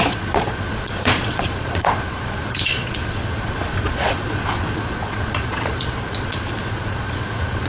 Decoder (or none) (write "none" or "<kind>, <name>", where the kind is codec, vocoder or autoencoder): vocoder, Vocos